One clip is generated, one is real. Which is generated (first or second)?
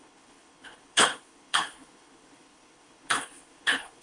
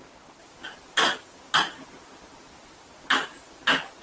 first